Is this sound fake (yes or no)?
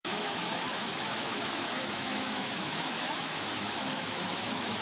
yes